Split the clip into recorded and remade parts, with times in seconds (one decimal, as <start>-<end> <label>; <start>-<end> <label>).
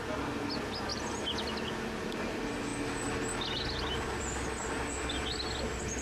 0.0-6.0 recorded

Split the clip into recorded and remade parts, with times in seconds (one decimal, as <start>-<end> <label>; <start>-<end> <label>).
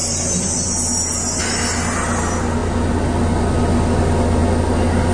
0.0-5.1 recorded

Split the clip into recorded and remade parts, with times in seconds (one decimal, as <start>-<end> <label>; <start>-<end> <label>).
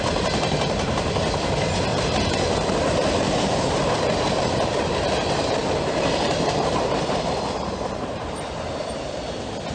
0.0-1.9 recorded; 1.9-4.0 remade; 4.0-5.6 recorded; 5.6-8.4 remade; 8.4-9.7 recorded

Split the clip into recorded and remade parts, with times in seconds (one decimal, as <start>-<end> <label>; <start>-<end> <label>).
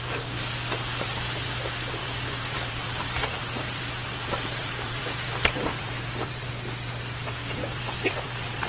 0.0-2.0 recorded; 2.0-6.5 remade; 6.5-7.4 recorded; 7.4-8.7 remade